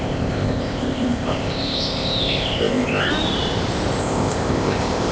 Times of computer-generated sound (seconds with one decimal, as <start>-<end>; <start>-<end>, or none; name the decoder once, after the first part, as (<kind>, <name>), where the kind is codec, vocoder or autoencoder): 0.0-3.1 (codec, ZipCodec); 4.0-5.1